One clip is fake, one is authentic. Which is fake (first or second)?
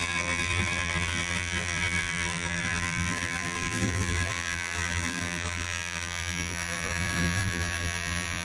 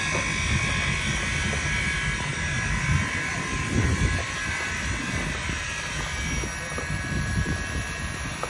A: first